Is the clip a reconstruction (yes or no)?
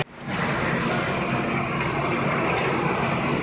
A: no